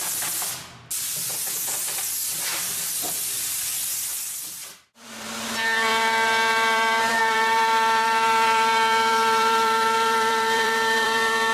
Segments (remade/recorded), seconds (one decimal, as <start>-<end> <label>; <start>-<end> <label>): 0.0-2.0 recorded; 2.0-11.5 remade